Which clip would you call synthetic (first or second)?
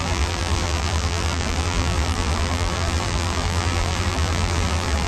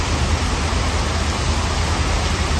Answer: first